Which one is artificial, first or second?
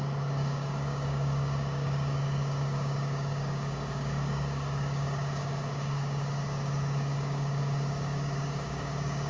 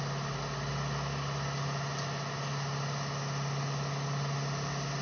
first